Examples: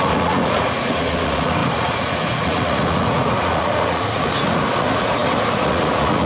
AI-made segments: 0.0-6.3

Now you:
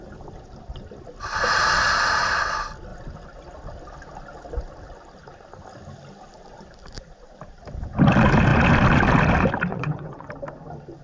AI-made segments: 9.7-10.3

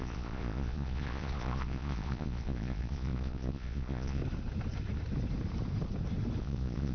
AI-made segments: 0.0-4.2; 6.4-6.9